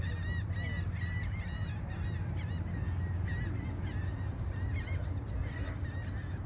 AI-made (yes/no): no